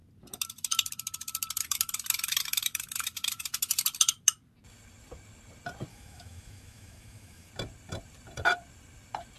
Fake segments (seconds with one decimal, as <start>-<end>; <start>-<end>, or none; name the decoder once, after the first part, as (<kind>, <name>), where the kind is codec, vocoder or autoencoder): 5.9-7.5 (autoencoder, DAC-VAE)